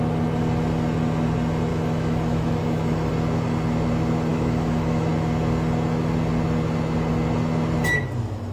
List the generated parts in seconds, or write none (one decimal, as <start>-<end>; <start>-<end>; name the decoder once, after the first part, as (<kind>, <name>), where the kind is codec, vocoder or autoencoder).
1.7-3.1 (autoencoder, DAC-VAE); 4.3-5.1